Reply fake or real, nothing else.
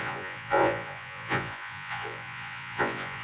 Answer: fake